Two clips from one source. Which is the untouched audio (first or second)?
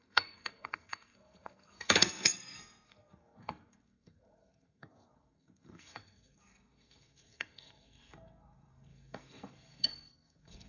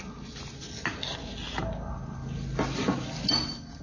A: second